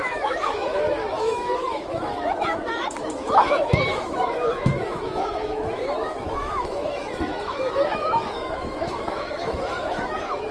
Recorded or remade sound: remade